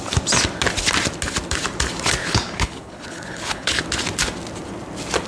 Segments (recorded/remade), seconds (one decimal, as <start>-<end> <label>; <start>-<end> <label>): 0.0-2.2 recorded; 2.2-3.8 remade; 3.8-5.3 recorded